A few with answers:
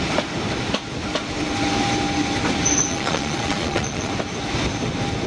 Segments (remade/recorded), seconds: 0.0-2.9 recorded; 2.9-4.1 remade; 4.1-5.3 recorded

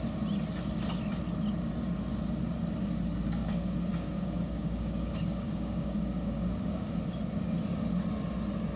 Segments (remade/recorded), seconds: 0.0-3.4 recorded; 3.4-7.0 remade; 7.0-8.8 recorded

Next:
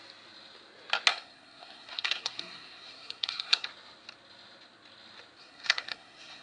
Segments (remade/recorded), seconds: 0.0-1.1 recorded; 1.1-3.7 remade; 3.7-5.4 recorded; 5.4-6.4 remade